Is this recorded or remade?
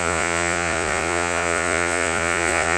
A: remade